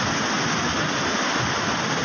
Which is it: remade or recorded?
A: recorded